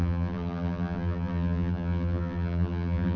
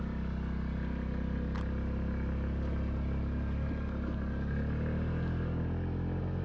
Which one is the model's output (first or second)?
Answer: first